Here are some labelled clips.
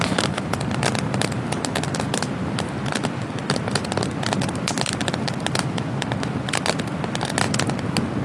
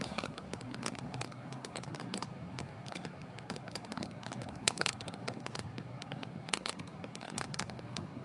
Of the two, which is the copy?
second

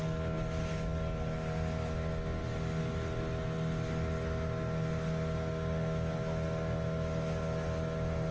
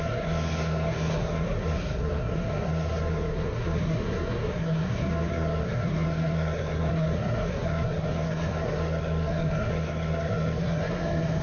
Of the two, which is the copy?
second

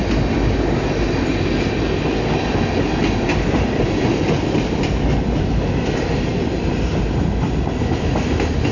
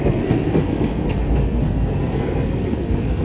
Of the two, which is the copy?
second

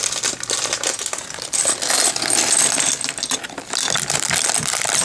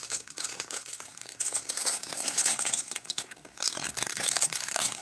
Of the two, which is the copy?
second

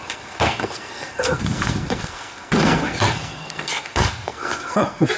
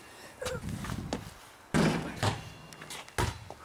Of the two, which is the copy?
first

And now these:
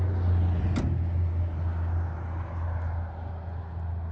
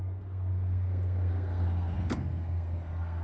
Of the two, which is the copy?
second